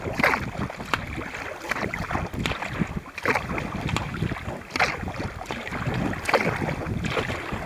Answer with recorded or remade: recorded